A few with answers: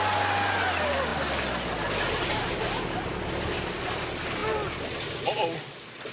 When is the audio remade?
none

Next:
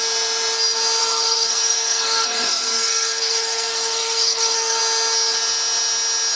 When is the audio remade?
1.0-4.8 (codec, SNAC)

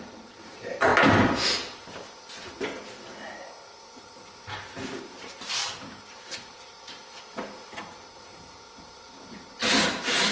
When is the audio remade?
0.0-0.9 (vocoder, BigVGAN v2); 4.4-5.6; 6.1-7.0; 7.7-10.3

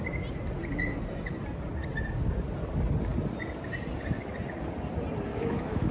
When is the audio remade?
5.3-5.9 (autoencoder, DAC-VAE)